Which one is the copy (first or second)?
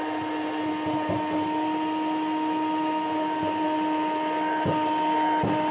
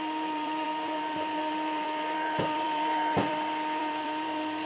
second